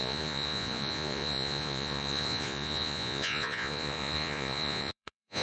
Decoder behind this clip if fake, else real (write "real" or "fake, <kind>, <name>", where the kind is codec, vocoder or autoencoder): fake, vocoder, Vocos